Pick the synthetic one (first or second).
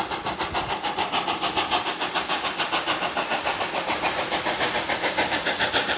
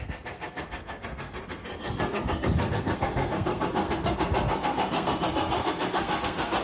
second